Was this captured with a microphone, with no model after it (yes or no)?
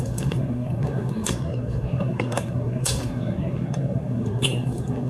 no